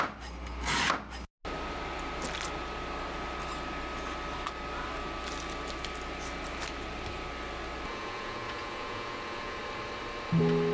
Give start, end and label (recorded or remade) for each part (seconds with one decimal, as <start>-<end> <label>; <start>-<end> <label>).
0.0-7.9 recorded; 7.9-9.6 remade; 9.6-10.7 recorded

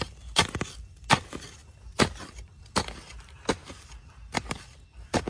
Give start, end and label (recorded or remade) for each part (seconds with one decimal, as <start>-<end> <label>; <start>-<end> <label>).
0.0-5.3 recorded

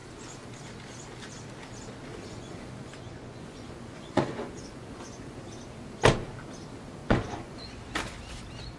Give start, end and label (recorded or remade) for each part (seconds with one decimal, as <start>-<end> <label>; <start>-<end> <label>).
0.0-2.1 recorded; 2.1-5.4 remade; 5.4-7.0 recorded; 7.0-7.8 remade; 7.8-8.8 recorded

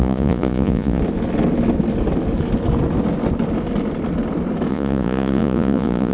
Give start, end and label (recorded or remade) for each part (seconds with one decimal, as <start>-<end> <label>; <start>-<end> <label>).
0.0-1.0 remade; 1.0-4.7 recorded; 4.7-6.1 remade

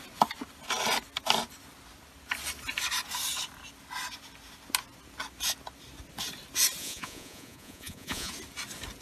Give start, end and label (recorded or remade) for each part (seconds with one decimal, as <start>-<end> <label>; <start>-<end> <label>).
0.0-6.8 recorded; 6.8-8.3 remade; 8.3-9.0 recorded

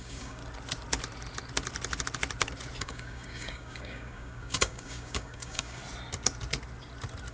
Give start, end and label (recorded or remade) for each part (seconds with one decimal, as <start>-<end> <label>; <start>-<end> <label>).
0.0-0.4 remade; 0.4-2.8 recorded; 2.8-5.8 remade; 5.8-7.3 recorded

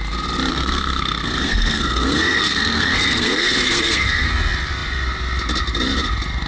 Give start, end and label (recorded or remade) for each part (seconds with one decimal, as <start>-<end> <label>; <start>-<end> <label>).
0.0-0.5 recorded; 0.5-4.3 remade; 4.3-6.5 recorded

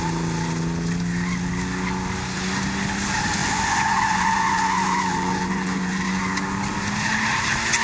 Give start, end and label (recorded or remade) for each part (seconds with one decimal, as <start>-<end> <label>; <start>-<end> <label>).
0.0-3.4 recorded; 3.4-6.2 remade; 6.2-7.8 recorded